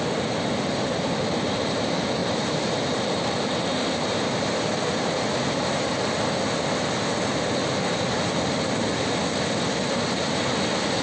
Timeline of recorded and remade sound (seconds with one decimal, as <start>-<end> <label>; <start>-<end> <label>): 0.0-2.2 recorded; 2.2-5.9 remade; 5.9-11.0 recorded